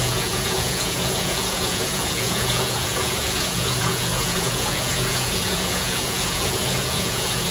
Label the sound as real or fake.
fake